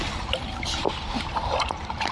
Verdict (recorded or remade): recorded